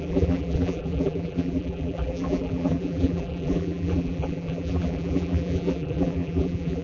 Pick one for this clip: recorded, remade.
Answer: remade